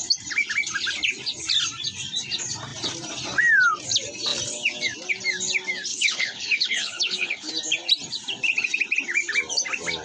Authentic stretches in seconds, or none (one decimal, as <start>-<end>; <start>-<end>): 0.0-5.9; 7.5-10.0